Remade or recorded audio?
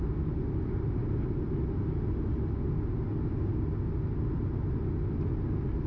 recorded